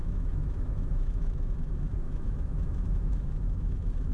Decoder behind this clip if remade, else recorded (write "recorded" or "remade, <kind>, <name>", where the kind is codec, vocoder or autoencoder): remade, autoencoder, DAC-VAE